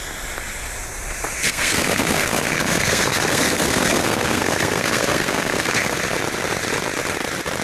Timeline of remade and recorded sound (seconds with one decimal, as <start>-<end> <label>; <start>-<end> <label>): 0.0-1.4 recorded; 1.4-6.0 remade; 6.0-7.6 recorded